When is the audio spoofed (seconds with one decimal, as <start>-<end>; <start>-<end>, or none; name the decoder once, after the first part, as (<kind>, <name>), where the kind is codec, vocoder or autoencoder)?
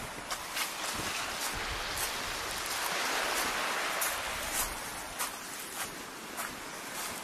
none